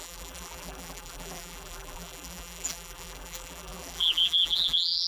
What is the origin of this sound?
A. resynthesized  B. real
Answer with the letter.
A